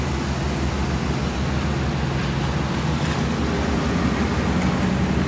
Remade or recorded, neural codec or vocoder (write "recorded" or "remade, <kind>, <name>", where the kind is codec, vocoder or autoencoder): recorded